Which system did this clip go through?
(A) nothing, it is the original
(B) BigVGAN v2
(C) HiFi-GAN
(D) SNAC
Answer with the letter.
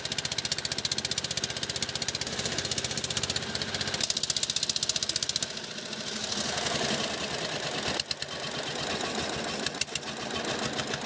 A